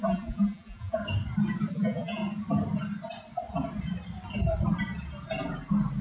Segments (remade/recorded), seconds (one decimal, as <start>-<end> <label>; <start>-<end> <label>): 0.0-1.0 remade; 1.0-1.7 recorded; 1.7-2.2 remade; 2.2-6.0 recorded